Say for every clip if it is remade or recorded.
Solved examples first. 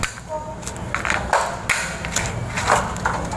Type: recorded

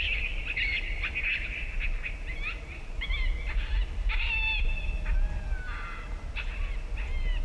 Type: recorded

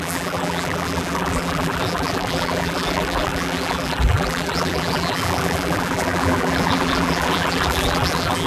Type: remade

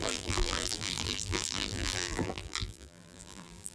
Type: remade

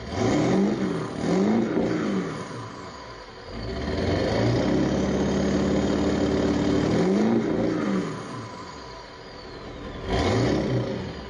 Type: recorded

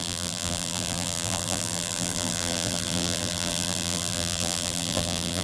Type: remade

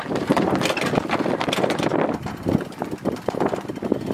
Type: recorded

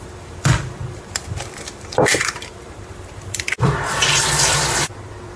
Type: remade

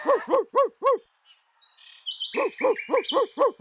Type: recorded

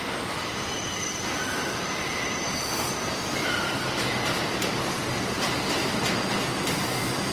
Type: recorded